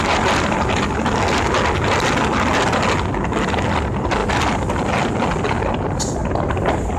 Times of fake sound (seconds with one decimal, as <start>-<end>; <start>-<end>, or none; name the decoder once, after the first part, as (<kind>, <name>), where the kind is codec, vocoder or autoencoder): none